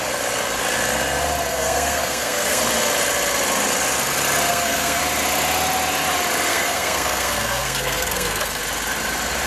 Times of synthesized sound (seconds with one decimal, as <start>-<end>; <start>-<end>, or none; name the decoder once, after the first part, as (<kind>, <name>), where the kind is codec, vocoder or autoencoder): 1.5-2.6 (codec, SNAC); 4.5-5.0; 6.5-8.6